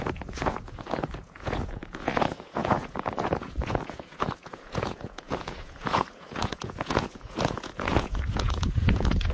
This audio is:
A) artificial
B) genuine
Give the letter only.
A